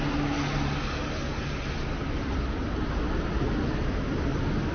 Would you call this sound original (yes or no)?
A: yes